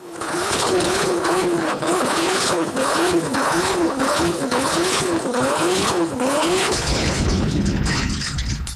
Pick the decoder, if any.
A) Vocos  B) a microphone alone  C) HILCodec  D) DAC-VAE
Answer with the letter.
C